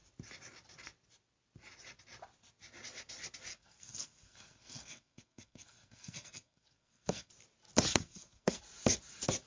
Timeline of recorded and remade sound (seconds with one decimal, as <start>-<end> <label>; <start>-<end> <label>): 0.0-3.5 recorded; 3.5-7.3 remade; 7.3-7.9 recorded; 7.9-8.6 remade; 8.6-9.5 recorded